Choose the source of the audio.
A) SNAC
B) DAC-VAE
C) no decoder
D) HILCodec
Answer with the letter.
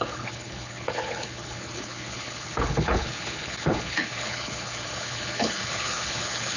D